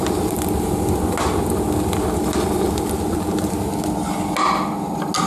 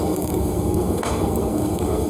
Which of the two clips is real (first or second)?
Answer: first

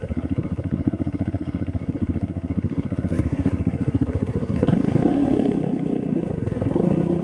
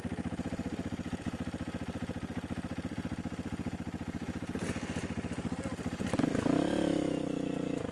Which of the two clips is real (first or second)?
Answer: second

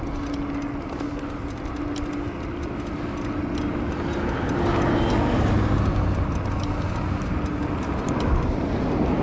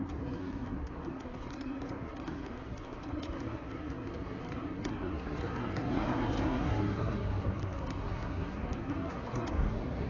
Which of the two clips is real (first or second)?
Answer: first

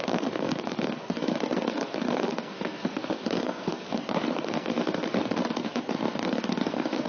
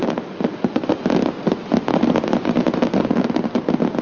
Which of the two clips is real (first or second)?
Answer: second